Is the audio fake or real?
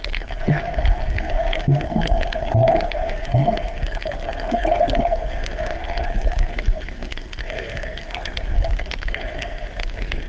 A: fake